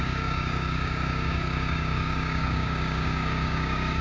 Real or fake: fake